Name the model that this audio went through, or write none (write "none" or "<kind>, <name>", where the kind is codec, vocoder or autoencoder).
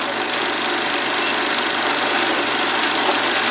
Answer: none